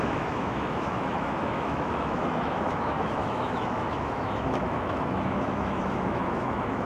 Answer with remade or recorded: remade